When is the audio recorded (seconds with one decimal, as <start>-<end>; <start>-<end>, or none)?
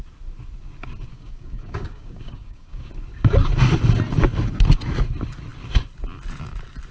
0.0-1.1; 2.9-6.9